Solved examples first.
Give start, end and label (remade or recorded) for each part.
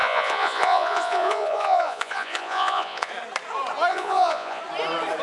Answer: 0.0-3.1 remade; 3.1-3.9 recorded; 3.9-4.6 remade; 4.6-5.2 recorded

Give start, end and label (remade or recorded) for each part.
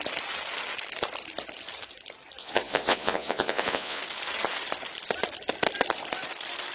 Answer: 0.0-2.4 recorded; 2.4-4.0 remade; 4.0-6.7 recorded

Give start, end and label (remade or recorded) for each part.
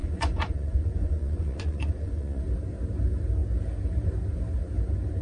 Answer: 0.0-2.4 remade; 2.4-5.2 recorded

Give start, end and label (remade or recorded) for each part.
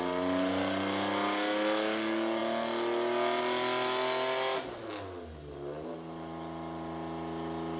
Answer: 0.0-7.8 recorded